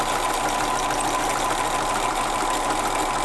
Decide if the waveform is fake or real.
real